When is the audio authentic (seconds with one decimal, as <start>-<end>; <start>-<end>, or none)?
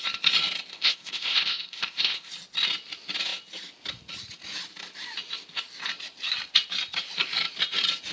0.0-0.7; 2.3-8.1